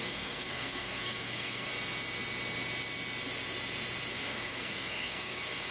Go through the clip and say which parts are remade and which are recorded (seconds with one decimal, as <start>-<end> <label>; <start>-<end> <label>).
0.0-1.7 remade; 1.7-4.1 recorded; 4.1-5.7 remade